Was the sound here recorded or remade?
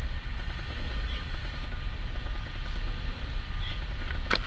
recorded